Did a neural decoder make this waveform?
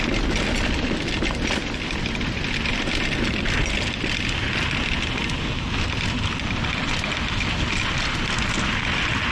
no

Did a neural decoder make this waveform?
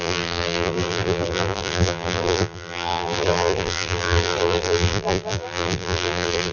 yes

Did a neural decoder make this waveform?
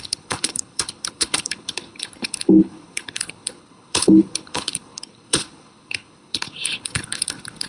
yes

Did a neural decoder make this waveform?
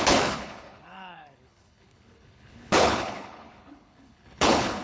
yes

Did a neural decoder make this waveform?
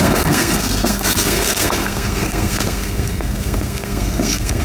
yes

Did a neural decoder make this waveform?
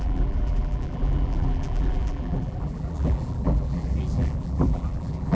yes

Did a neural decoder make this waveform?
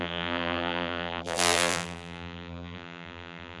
yes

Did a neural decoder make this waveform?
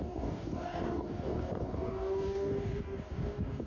yes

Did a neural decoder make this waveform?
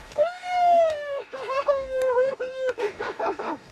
yes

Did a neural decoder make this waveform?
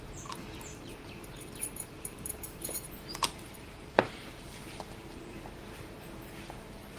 yes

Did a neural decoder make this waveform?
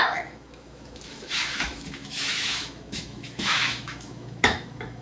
yes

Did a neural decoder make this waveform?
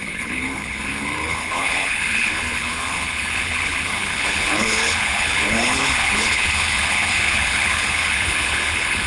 yes